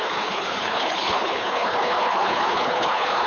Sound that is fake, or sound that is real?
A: fake